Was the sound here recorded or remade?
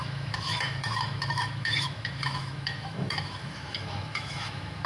remade